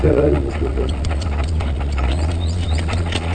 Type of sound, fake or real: fake